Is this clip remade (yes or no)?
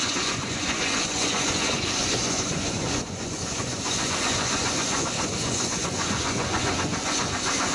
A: yes